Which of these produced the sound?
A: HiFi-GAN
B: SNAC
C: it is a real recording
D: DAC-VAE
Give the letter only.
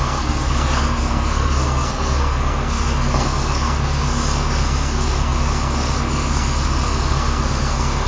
B